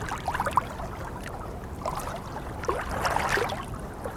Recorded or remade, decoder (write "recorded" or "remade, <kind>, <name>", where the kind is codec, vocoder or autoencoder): recorded